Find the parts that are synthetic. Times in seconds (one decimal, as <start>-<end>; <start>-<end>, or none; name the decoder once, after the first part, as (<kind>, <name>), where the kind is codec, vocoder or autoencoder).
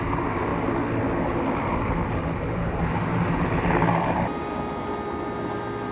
none